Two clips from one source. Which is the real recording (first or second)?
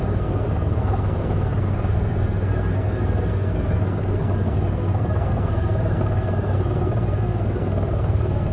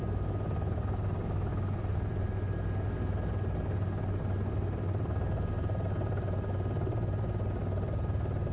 second